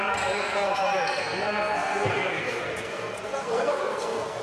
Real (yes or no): no